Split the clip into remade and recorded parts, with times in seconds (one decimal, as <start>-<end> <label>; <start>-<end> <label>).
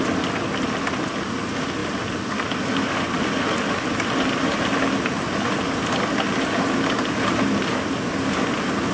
0.0-8.9 recorded